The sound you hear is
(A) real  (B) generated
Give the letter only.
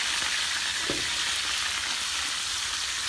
A